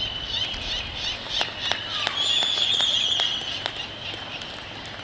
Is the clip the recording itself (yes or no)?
yes